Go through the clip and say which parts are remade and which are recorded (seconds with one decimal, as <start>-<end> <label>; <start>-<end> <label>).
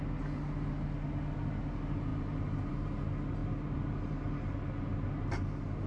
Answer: 0.0-5.9 recorded